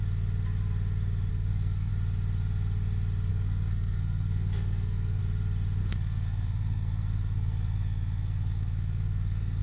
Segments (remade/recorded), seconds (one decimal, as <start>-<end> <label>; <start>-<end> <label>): 0.0-1.3 recorded; 1.3-1.9 remade; 1.9-3.3 recorded; 3.3-5.2 remade; 5.2-5.8 recorded; 5.8-9.6 remade